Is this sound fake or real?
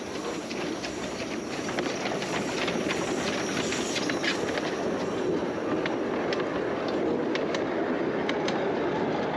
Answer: real